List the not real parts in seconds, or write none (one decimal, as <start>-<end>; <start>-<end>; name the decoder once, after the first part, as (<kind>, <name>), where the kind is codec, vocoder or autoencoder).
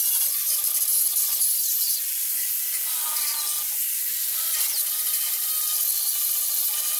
none